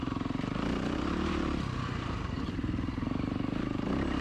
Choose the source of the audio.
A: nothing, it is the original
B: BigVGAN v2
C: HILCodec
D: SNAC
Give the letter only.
B